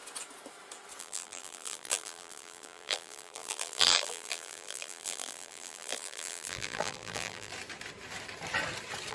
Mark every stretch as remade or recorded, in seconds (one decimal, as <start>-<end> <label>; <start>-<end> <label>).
0.0-1.0 recorded; 1.0-7.5 remade; 7.5-9.1 recorded